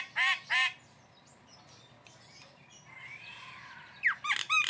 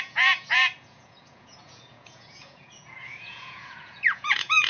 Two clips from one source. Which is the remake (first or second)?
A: second